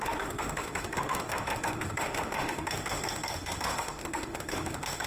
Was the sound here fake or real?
fake